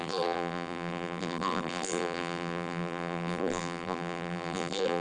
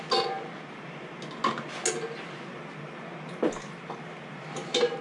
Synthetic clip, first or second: first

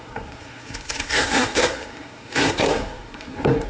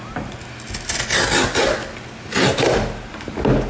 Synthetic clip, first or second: first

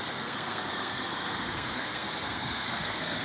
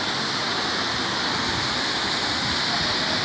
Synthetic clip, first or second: first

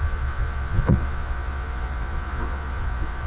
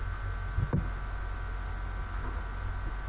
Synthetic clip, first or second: first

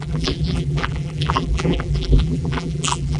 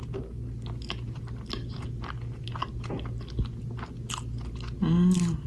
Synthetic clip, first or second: first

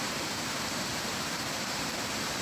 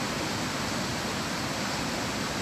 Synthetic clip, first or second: first